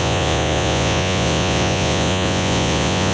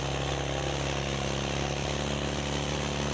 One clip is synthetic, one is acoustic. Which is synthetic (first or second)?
first